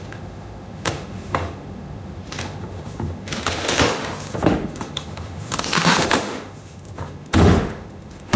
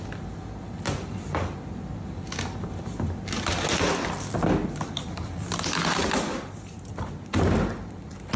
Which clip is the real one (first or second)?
second